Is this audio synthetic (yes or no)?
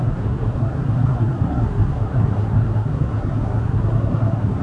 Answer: yes